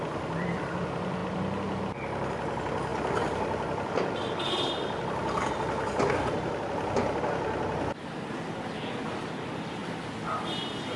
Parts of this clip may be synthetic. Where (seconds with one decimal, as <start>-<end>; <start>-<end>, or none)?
0.0-9.8; 10.4-11.0